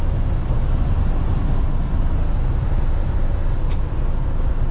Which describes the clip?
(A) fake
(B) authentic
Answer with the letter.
B